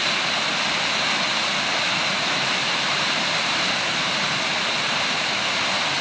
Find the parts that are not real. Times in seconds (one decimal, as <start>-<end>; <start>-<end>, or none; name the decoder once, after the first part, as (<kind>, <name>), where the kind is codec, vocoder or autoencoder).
1.4-5.0 (vocoder, BigVGAN v2)

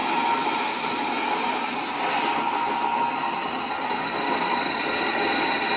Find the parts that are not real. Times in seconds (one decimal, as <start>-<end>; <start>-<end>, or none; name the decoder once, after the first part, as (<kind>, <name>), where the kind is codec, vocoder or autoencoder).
none

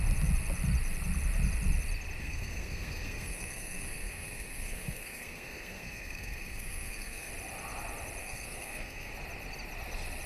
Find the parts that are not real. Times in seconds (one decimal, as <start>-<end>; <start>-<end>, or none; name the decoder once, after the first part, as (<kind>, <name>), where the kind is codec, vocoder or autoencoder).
2.2-7.3 (codec, SNAC); 8.2-9.1